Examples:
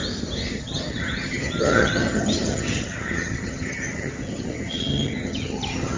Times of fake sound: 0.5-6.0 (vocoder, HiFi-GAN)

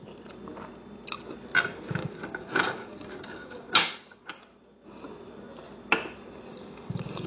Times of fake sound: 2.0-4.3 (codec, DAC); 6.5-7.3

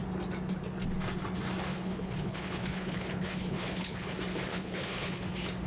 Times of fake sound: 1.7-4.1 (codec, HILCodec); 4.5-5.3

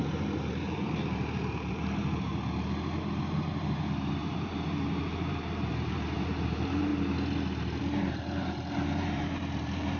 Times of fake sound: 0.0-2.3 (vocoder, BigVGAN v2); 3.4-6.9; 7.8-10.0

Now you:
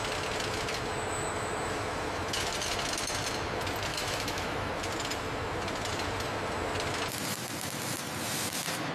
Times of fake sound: 3.9-4.7 (autoencoder, DAC-VAE)